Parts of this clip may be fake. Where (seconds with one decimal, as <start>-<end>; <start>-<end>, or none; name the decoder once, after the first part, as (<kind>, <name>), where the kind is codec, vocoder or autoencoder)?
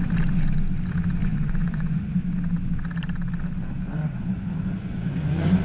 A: 1.2-2.2 (vocoder, Vocos); 3.8-5.6